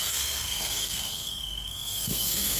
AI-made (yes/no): yes